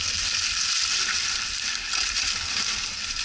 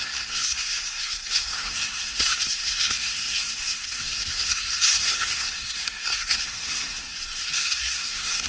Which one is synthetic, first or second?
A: second